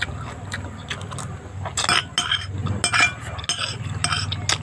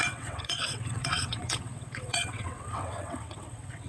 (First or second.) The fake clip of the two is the second